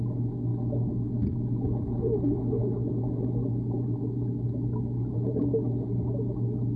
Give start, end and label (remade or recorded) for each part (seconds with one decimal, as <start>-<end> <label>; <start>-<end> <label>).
0.0-6.8 recorded